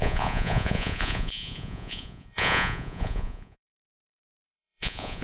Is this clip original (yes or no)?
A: no